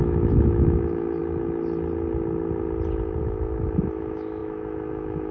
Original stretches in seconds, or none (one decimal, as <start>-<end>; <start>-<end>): 1.2-3.2